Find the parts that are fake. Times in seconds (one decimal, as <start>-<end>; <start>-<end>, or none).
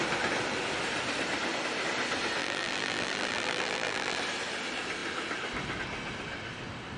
2.4-4.2